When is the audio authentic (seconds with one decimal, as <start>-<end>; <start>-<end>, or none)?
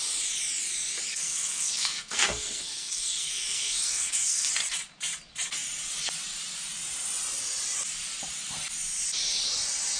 0.0-1.1; 4.5-10.0